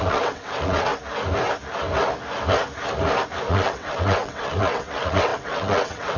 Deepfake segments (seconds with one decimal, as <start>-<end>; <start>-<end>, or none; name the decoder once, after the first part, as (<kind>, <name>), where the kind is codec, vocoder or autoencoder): 0.0-0.9 (vocoder, WaveNeXt); 3.5-6.2